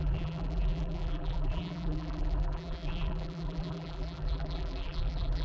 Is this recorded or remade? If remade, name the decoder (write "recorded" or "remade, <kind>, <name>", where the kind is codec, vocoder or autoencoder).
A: remade, vocoder, BigVGAN v2